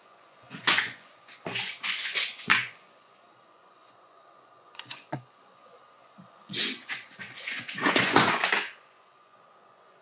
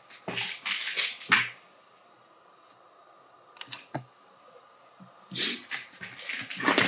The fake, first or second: first